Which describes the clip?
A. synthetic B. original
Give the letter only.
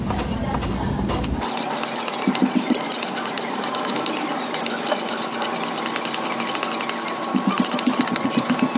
B